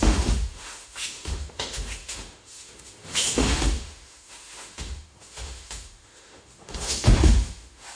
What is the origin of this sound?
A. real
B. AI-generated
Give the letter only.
B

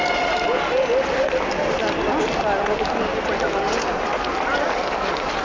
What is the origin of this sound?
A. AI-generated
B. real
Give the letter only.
B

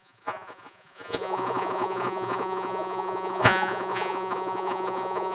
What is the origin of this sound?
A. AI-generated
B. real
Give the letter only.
A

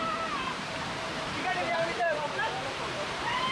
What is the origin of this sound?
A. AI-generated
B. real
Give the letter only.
A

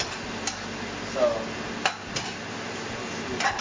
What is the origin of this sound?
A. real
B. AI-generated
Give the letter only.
A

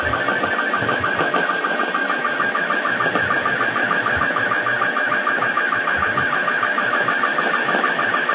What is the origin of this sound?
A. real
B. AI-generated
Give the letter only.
A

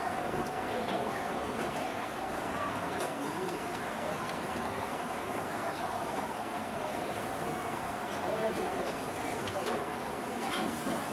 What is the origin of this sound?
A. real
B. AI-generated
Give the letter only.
B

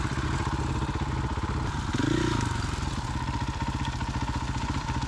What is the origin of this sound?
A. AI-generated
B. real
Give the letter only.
B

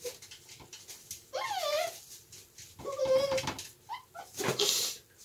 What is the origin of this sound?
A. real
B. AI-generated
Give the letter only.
A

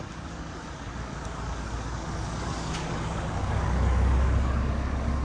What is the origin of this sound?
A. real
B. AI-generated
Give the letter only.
B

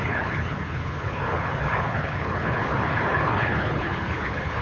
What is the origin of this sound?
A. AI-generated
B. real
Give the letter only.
A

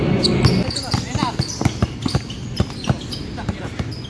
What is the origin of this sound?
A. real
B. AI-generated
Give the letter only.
A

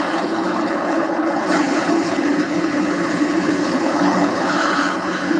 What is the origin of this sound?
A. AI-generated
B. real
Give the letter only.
A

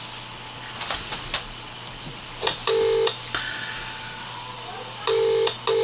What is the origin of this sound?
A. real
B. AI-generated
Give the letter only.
A